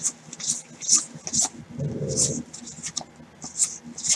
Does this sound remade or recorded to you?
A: recorded